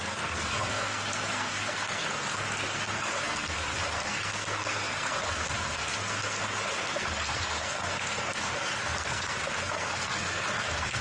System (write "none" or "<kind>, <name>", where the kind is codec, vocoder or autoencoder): codec, SNAC